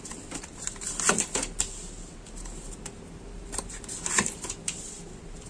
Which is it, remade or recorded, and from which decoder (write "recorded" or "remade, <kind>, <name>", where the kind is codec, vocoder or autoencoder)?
recorded